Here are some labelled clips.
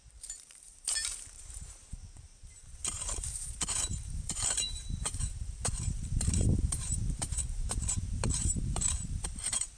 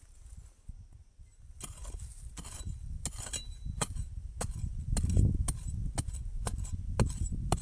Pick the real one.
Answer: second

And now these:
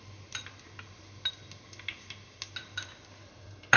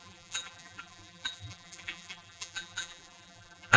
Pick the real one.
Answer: first